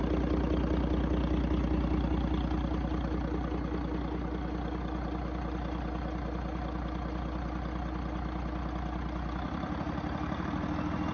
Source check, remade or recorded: recorded